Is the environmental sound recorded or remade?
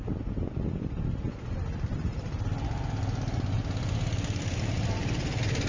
recorded